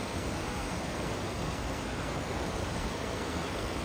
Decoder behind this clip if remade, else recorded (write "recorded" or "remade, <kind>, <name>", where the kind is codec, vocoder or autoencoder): remade, codec, SNAC